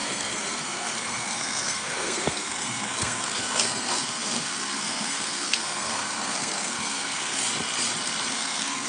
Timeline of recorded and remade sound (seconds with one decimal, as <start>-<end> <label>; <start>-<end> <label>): 0.0-7.4 remade; 7.4-8.3 recorded; 8.3-8.9 remade